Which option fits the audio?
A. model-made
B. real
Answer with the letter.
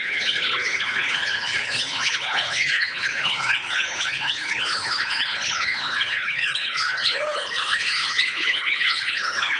A